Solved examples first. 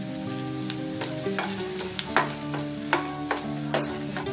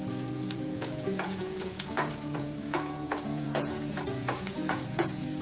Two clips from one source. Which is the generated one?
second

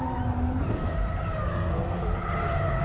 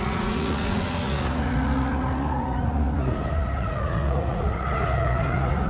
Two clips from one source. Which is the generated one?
second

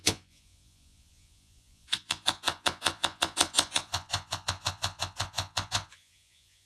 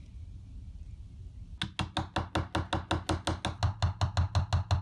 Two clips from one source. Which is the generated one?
first